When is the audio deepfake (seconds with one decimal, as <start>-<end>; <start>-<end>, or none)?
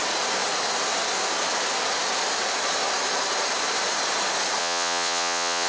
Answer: 4.6-5.7